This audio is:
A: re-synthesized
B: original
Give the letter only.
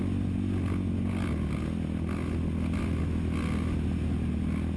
B